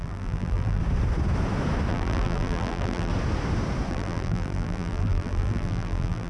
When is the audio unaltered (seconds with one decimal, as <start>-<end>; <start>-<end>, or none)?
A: 0.8-1.9; 3.1-3.9